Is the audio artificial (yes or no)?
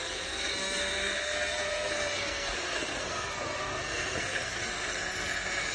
yes